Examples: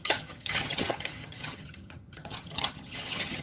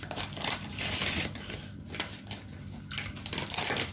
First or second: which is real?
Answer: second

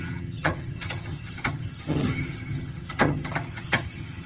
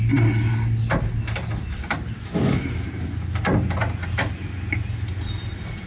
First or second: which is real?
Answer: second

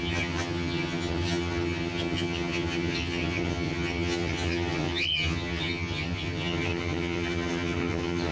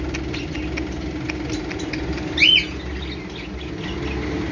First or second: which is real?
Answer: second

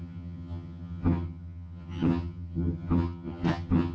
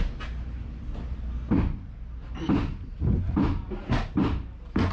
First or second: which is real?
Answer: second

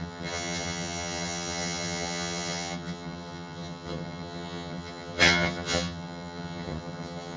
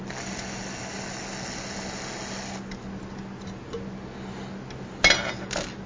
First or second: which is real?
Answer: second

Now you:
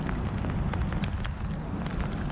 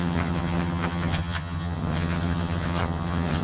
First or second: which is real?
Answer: first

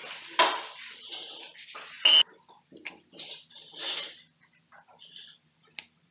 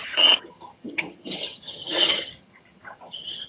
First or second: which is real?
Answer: first